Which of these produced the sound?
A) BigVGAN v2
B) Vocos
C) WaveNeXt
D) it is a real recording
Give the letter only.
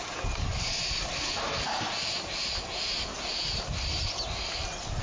D